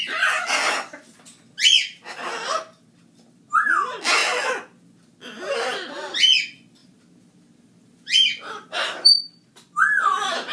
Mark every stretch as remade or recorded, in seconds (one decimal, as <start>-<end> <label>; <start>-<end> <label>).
0.0-6.8 recorded; 6.8-9.2 remade; 9.2-10.5 recorded